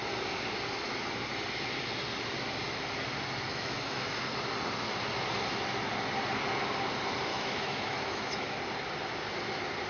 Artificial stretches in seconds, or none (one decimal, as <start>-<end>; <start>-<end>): 3.5-4.2; 7.3-8.6